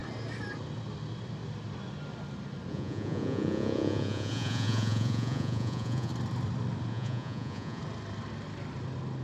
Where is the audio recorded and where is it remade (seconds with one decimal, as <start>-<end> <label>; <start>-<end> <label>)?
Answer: 0.0-2.7 recorded; 2.7-6.1 remade; 6.1-6.9 recorded; 6.9-7.8 remade; 7.8-9.2 recorded